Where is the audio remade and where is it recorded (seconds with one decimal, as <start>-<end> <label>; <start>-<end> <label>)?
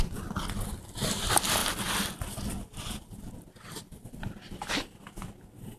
0.0-5.8 recorded